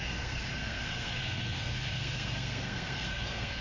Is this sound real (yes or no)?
no